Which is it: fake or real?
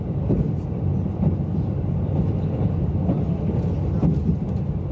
real